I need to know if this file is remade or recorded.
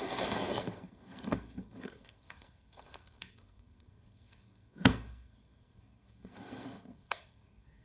remade